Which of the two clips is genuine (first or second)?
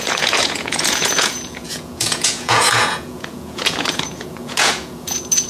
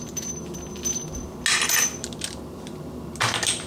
second